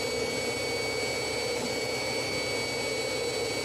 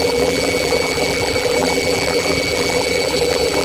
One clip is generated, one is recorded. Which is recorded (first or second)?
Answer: first